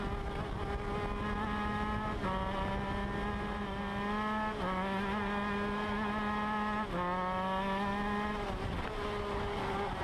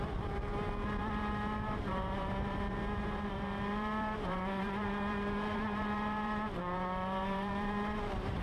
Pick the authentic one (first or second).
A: first